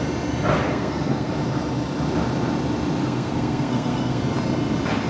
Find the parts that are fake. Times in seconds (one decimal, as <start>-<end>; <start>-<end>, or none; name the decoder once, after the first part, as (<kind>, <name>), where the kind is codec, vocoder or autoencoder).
0.7-1.3 (codec, SNAC); 3.0-4.2